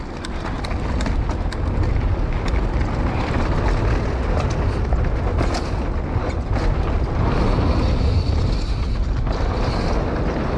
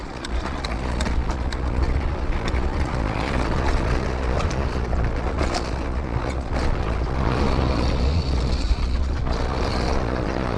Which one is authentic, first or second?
first